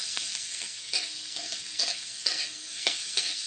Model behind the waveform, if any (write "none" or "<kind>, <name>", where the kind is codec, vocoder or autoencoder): codec, SNAC